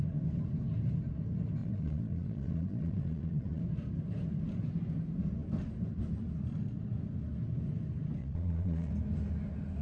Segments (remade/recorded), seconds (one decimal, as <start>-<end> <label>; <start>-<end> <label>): 0.0-1.6 recorded; 1.6-3.6 remade; 3.6-8.2 recorded; 8.2-8.9 remade; 8.9-9.8 recorded